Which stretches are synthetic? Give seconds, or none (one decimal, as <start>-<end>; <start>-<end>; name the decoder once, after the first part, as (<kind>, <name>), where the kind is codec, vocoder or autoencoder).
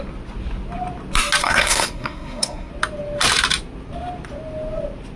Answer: 1.4-2.7 (codec, SNAC)